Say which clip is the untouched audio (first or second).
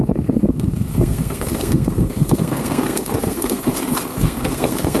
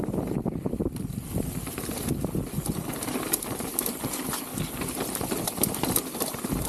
second